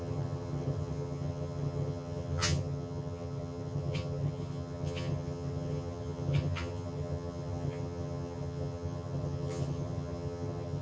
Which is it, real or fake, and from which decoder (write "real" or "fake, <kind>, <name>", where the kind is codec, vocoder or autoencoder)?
fake, vocoder, HiFi-GAN